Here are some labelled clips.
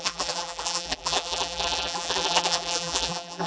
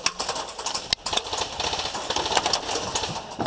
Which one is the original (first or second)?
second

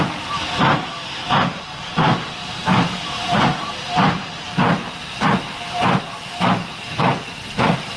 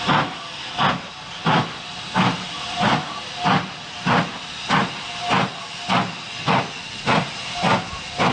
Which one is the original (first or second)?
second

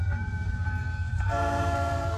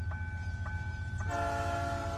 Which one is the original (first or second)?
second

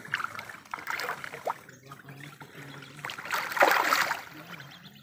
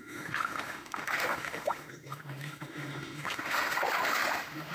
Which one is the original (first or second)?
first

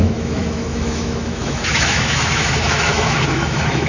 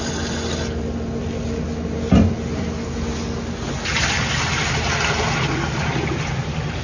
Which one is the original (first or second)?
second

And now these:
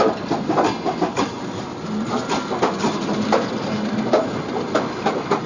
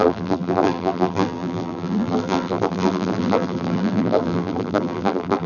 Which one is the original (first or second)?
first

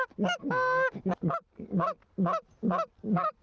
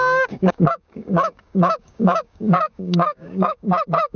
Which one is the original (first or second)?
first